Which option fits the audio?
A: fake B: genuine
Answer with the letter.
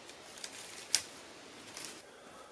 B